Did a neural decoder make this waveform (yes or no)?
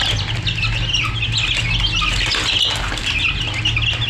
no